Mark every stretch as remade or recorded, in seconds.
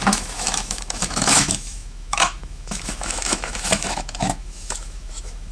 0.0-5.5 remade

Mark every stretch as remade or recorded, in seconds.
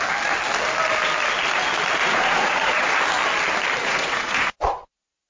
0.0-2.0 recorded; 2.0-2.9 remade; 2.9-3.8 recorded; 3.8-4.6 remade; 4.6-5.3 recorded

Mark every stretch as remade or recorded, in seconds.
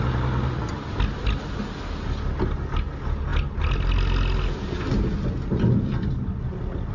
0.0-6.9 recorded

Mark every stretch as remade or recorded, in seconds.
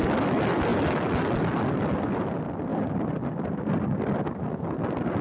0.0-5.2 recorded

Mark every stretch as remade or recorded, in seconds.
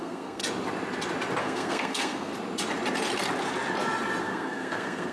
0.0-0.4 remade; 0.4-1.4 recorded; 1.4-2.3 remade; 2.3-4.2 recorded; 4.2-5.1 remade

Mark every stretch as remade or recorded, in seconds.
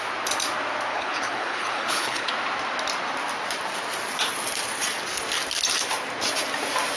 0.0-0.9 recorded; 0.9-2.3 remade; 2.3-7.0 recorded